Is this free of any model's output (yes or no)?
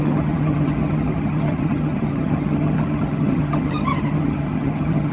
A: no